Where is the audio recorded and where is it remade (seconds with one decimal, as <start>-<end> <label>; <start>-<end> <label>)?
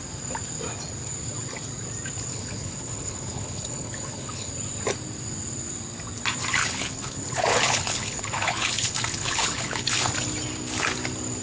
0.0-2.3 recorded; 2.3-4.5 remade; 4.5-6.6 recorded; 6.6-10.1 remade; 10.1-11.4 recorded